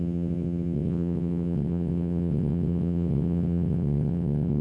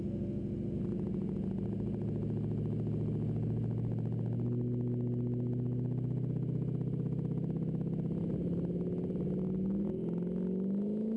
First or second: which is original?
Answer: second